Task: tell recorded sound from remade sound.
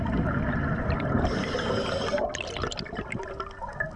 recorded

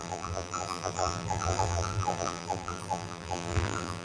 remade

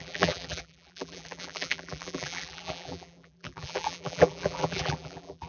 remade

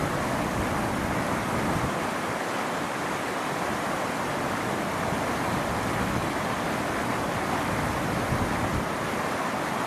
recorded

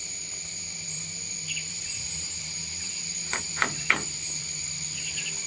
remade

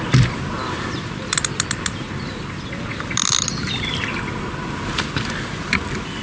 remade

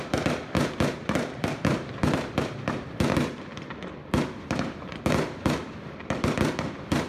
remade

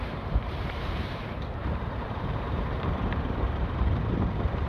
remade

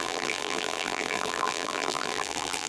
remade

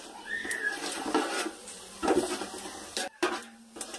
remade